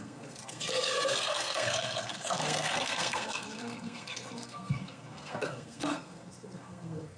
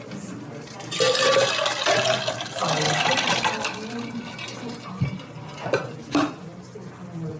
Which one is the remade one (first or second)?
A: first